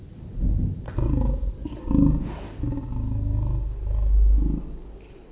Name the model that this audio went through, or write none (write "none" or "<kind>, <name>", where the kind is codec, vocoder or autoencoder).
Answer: none